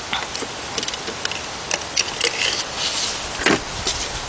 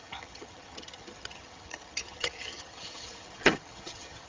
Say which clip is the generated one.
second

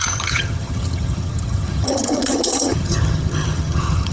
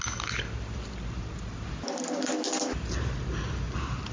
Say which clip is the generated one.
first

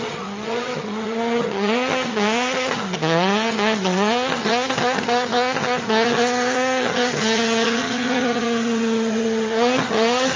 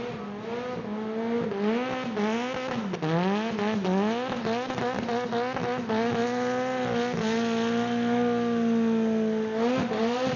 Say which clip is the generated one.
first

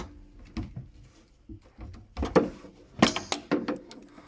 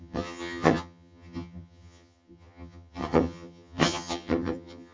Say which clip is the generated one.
second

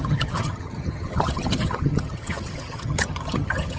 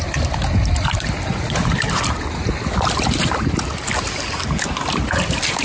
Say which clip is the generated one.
first